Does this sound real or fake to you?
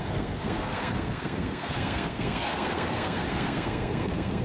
fake